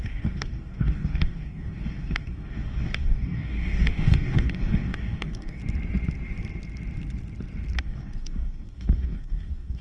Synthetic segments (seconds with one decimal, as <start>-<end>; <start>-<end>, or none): 0.0-5.6; 7.8-9.8